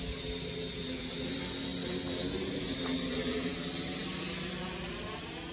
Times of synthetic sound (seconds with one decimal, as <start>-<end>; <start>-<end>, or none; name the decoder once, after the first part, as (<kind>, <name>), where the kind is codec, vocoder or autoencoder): none